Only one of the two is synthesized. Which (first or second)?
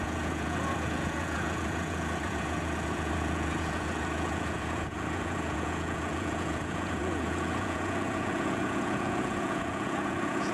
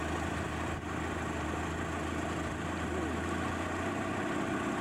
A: first